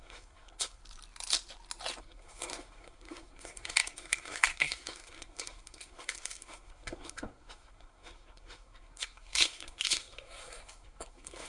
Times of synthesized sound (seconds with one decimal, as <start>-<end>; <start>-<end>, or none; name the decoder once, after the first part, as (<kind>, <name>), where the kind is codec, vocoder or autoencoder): 0.0-0.8 (codec, SNAC); 2.0-11.5